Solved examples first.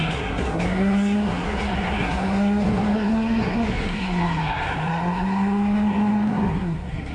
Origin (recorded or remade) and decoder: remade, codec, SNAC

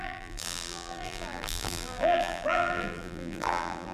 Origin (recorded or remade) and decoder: remade, vocoder, BigVGAN v2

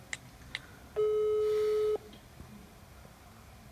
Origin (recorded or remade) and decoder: recorded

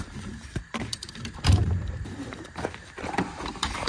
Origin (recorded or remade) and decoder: remade, vocoder, BigVGAN v2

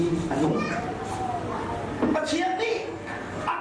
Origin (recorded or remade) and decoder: recorded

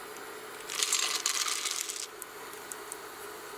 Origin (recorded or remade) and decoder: recorded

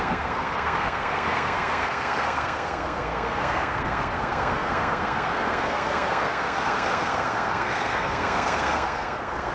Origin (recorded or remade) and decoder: remade, codec, SNAC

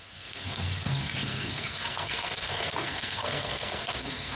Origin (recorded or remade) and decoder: remade, codec, SNAC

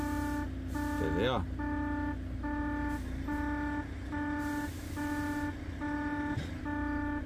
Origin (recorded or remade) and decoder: recorded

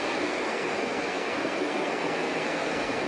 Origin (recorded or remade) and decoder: remade, codec, SNAC